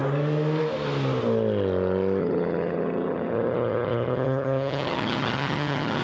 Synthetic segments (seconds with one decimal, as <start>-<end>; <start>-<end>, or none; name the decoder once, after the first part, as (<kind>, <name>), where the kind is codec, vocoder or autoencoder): 2.2-6.0 (vocoder, HiFi-GAN)